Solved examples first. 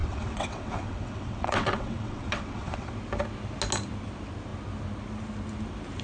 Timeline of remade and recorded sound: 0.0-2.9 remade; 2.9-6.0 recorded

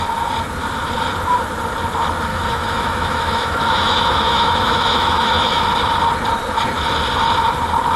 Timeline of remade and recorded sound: 0.0-2.3 recorded; 2.3-5.6 remade; 5.6-8.0 recorded

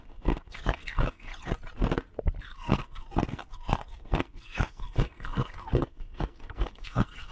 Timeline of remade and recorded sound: 0.0-1.3 remade; 1.3-2.4 recorded; 2.4-7.3 remade

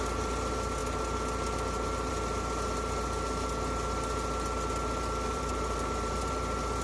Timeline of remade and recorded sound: 0.0-5.3 recorded; 5.3-6.3 remade; 6.3-6.8 recorded

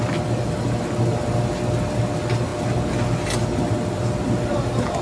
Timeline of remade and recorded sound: 0.0-5.0 recorded

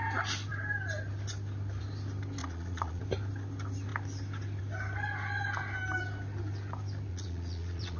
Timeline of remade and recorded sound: 0.0-2.4 recorded; 2.4-3.0 remade; 3.0-7.1 recorded; 7.1-8.0 remade

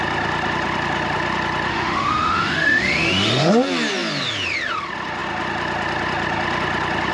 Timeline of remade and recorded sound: 0.0-1.7 recorded; 1.7-3.5 remade; 3.5-7.1 recorded